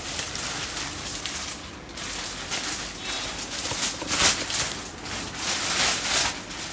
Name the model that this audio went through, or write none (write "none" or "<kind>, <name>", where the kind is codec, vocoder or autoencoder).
none